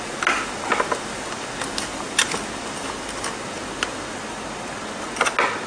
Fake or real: real